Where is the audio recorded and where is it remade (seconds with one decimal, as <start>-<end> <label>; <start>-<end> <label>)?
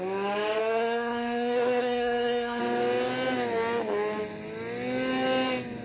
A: 0.0-0.6 recorded; 0.6-2.6 remade; 2.6-5.8 recorded